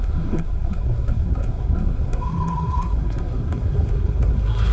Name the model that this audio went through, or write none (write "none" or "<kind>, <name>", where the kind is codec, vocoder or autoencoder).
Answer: codec, SNAC